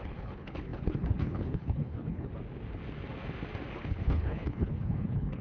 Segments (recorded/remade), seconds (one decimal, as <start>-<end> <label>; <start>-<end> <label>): 0.0-2.3 remade; 2.3-3.7 recorded; 3.7-5.4 remade